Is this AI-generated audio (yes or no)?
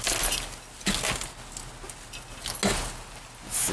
no